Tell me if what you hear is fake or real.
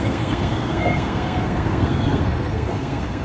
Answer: fake